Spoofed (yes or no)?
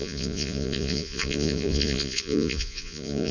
yes